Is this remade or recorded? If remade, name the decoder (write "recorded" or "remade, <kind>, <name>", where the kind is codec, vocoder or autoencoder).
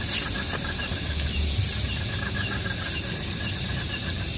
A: remade, vocoder, BigVGAN v2